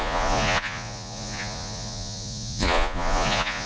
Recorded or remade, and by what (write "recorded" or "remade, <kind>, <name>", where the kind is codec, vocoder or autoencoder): remade, vocoder, Vocos